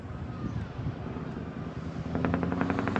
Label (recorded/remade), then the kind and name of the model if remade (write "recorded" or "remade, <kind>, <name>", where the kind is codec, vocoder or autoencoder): recorded